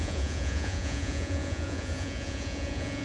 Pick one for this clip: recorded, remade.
remade